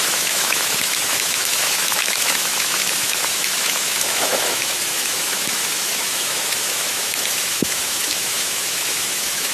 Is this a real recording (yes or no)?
no